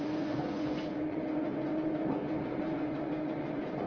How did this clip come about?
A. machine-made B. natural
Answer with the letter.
A